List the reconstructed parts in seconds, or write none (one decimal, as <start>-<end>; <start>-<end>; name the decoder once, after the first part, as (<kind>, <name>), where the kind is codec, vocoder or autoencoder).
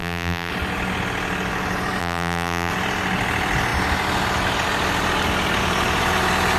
0.0-0.5 (vocoder, BigVGAN v2); 2.0-2.7